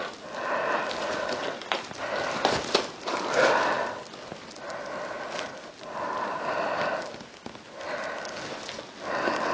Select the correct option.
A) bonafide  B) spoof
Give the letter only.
A